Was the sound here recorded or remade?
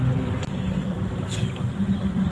remade